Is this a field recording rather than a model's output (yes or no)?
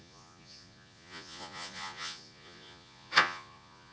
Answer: no